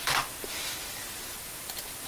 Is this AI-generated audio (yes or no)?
yes